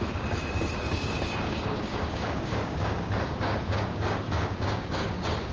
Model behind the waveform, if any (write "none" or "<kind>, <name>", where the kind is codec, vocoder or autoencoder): codec, DAC